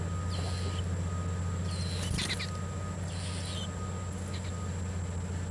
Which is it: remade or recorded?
recorded